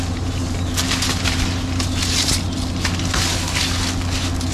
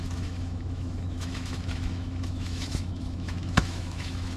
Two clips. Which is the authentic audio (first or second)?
first